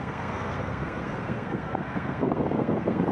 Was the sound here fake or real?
fake